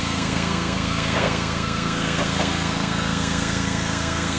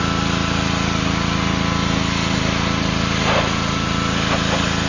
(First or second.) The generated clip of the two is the first